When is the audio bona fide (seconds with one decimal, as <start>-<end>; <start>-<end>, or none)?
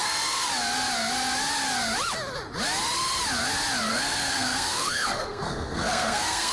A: 0.5-3.9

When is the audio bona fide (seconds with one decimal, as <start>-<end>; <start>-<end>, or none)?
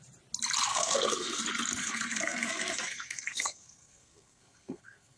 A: 0.0-0.7; 1.4-1.8